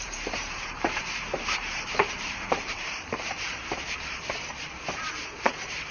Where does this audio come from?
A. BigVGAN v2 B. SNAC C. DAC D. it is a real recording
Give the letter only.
A